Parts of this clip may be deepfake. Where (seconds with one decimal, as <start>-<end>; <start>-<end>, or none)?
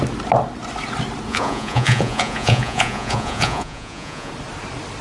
1.3-4.3